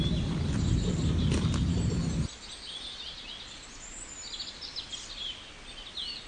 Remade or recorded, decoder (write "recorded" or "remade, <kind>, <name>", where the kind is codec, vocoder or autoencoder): recorded